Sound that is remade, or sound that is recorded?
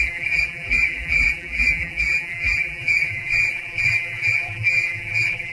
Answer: remade